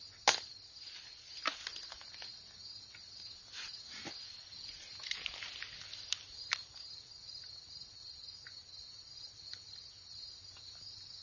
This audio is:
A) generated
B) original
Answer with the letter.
B